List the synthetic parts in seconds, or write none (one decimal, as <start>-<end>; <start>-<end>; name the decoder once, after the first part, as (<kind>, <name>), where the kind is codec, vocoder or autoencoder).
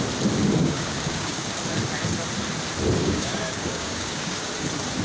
0.6-1.4 (codec, DAC); 3.0-4.5